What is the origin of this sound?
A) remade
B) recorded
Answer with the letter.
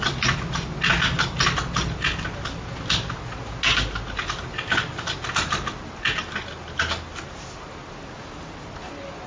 B